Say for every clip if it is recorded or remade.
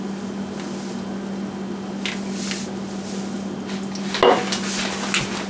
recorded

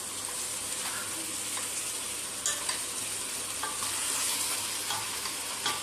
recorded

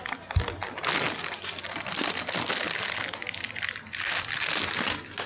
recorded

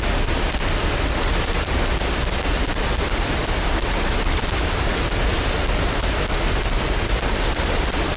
recorded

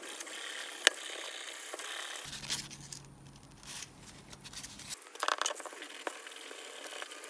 recorded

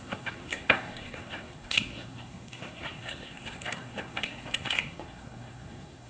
remade